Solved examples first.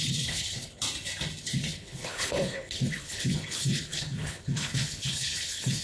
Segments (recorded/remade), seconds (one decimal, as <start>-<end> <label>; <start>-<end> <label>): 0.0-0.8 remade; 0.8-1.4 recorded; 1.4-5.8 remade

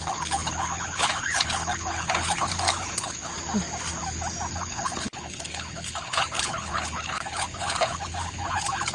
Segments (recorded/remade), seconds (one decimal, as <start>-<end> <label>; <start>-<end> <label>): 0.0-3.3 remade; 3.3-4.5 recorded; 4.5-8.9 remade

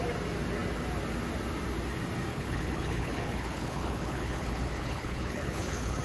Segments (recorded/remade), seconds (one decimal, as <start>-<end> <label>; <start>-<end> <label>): 0.0-2.3 recorded; 2.3-6.0 remade